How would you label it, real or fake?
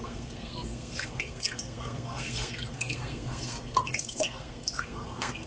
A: fake